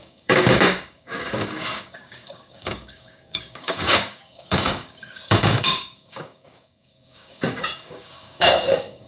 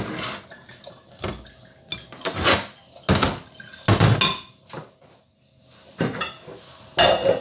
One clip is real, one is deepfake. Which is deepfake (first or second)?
first